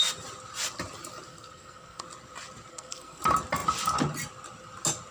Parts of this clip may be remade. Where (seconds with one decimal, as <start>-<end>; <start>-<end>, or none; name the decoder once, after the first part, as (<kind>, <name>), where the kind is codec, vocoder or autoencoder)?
1.3-2.0 (codec, SNAC); 2.7-3.2